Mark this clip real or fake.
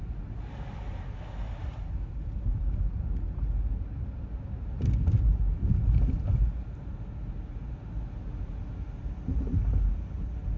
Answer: real